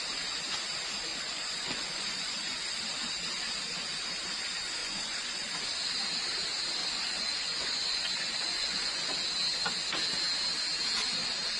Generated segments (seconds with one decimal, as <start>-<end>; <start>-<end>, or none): 1.1-2.6; 4.8-5.5; 6.8-9.1